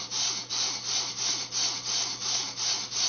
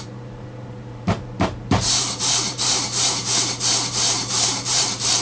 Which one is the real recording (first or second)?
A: first